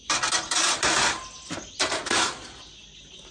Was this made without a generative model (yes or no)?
yes